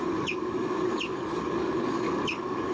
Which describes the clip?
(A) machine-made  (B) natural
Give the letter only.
A